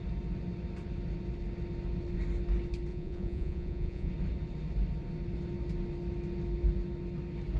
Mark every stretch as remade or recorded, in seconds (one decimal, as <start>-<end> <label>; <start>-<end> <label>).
0.0-2.9 recorded; 2.9-4.1 remade; 4.1-7.6 recorded